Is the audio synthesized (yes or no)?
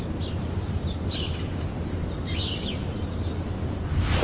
no